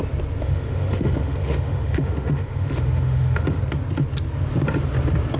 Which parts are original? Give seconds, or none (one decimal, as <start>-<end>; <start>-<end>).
0.0-0.4; 3.6-5.4